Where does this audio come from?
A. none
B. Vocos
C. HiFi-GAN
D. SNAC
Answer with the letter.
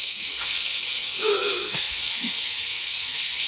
D